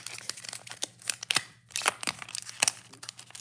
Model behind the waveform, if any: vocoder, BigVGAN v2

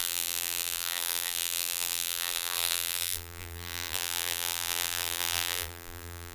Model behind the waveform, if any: vocoder, BigVGAN v2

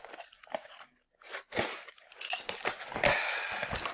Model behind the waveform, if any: none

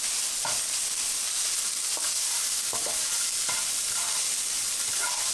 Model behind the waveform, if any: none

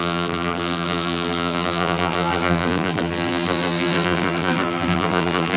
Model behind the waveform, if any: vocoder, BigVGAN v2